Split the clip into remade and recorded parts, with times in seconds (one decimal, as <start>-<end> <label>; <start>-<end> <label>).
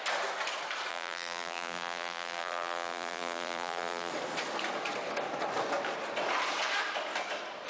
0.0-0.9 recorded; 0.9-4.1 remade; 4.1-7.7 recorded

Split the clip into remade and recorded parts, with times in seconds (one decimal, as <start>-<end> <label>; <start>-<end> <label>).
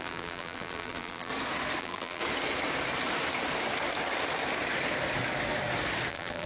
0.0-1.3 remade; 1.3-1.8 recorded; 1.8-2.2 remade; 2.2-6.1 recorded; 6.1-6.5 remade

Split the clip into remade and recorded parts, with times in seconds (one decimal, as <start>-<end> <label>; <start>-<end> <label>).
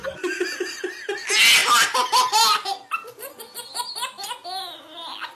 0.0-5.3 recorded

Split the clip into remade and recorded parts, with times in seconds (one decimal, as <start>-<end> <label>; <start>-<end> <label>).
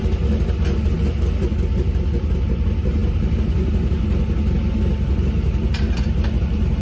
0.0-6.8 recorded